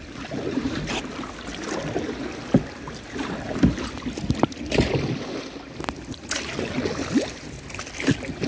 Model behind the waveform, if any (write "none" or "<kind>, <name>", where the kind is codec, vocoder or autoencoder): none